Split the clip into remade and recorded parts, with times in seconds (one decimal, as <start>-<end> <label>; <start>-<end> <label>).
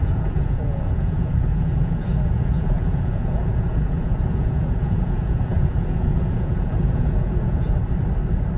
0.0-7.8 remade; 7.8-8.6 recorded